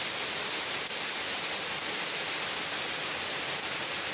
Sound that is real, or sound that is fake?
real